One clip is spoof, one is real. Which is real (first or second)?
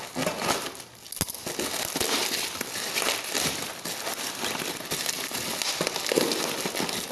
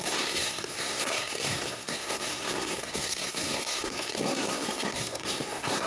first